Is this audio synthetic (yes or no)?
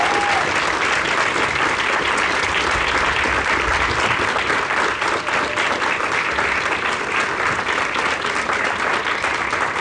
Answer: no